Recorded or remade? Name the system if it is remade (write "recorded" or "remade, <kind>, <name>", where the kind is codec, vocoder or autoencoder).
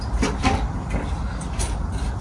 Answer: recorded